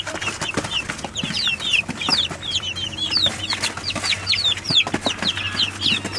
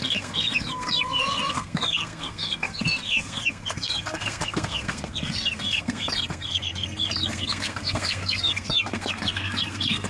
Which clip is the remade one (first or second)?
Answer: second